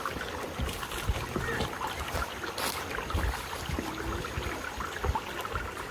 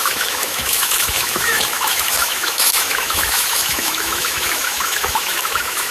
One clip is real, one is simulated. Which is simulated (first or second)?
second